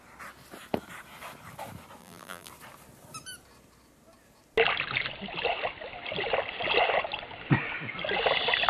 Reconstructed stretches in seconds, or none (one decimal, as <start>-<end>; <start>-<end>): 2.0-2.5